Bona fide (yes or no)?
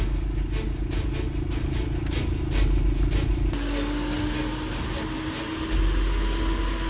yes